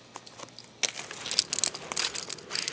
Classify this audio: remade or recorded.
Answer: recorded